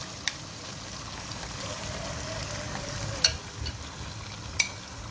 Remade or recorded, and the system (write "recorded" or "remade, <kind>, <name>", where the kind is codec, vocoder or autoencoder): recorded